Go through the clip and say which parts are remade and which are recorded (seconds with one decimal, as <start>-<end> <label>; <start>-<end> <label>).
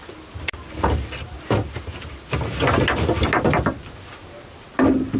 0.0-5.2 recorded